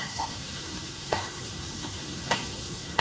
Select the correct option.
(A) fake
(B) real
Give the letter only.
A